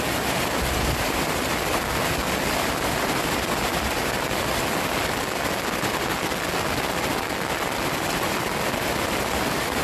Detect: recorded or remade recorded